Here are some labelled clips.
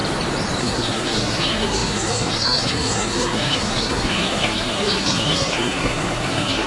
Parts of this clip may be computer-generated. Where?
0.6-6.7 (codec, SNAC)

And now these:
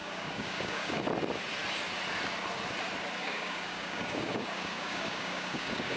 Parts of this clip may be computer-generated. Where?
0.0-1.0 (codec, DAC); 3.2-6.0

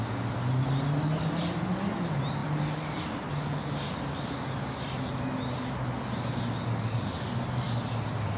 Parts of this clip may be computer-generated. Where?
none

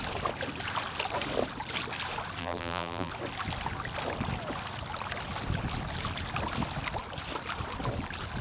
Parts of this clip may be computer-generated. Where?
2.4-3.1 (vocoder, BigVGAN v2)

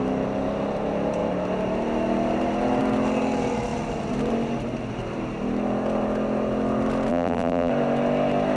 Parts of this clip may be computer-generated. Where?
7.1-7.7 (vocoder, BigVGAN v2)